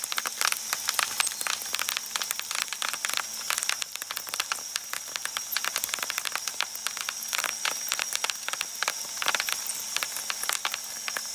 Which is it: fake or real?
real